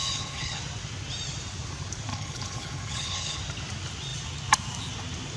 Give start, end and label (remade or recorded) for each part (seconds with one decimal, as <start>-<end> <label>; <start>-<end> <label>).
0.0-0.6 remade; 0.6-2.1 recorded; 2.1-3.4 remade; 3.4-5.4 recorded